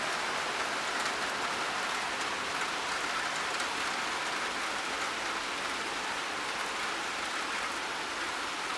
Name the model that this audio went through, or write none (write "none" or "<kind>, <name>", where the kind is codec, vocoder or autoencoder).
none